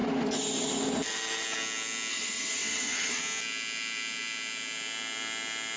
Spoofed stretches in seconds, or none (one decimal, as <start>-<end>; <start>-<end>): 2.1-3.2